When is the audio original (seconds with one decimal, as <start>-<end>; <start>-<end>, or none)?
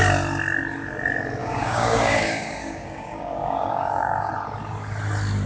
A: 0.0-1.4; 4.3-5.5